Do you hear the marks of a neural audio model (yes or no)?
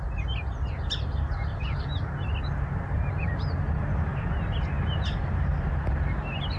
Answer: no